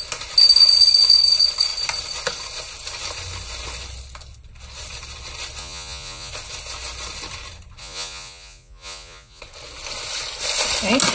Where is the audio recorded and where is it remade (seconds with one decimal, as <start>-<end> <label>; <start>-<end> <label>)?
0.0-5.6 recorded; 5.6-6.3 remade; 6.3-7.8 recorded; 7.8-9.4 remade; 9.4-11.1 recorded